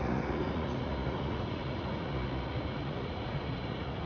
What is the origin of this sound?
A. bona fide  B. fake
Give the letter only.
B